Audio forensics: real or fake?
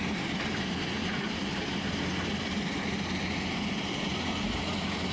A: real